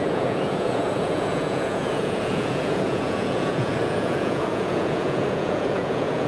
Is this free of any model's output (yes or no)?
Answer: no